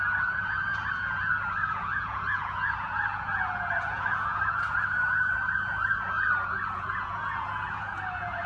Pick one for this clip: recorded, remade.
remade